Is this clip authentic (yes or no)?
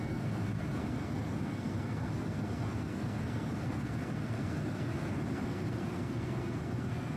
no